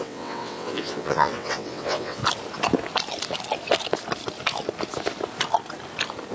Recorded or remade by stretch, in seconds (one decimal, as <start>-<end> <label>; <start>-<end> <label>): 0.0-2.2 remade; 2.2-6.3 recorded